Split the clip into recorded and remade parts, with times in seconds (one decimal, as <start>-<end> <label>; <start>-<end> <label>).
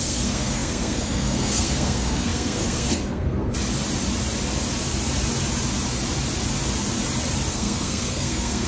0.0-3.5 remade; 3.5-7.5 recorded; 7.5-8.7 remade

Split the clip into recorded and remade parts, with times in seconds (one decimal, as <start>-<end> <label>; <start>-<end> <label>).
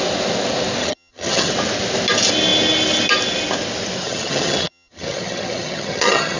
0.0-0.8 recorded; 0.8-1.5 remade; 1.5-4.0 recorded; 4.0-6.4 remade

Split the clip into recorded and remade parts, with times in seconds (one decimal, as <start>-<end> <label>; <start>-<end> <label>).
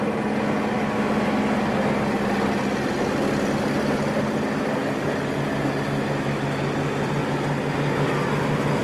0.0-8.8 recorded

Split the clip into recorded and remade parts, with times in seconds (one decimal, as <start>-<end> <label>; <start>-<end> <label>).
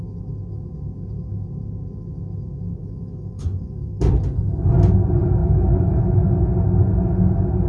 0.0-2.8 recorded; 2.8-4.0 remade; 4.0-5.4 recorded; 5.4-6.0 remade; 6.0-7.7 recorded